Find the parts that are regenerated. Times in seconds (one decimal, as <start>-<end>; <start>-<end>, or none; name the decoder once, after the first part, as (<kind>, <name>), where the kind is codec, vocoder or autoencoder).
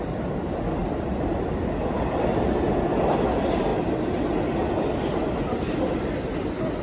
none